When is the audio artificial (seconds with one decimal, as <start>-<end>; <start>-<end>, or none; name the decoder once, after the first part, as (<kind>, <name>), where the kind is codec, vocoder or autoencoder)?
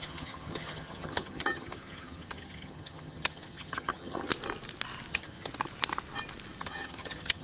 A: 0.0-4.3 (vocoder, HiFi-GAN); 5.1-5.5; 6.6-7.4